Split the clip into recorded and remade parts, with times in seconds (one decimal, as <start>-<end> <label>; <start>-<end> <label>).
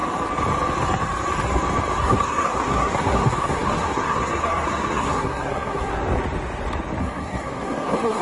0.0-2.0 recorded; 2.0-5.9 remade; 5.9-7.0 recorded; 7.0-8.2 remade